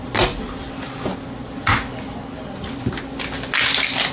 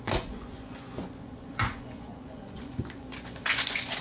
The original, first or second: first